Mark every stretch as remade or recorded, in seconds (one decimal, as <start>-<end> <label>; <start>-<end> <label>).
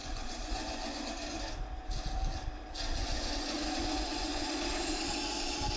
0.0-1.1 remade; 1.1-3.0 recorded; 3.0-4.6 remade; 4.6-5.8 recorded